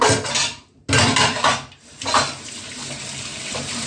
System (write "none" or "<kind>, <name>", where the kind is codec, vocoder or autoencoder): none